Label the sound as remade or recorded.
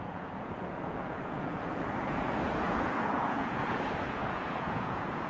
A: remade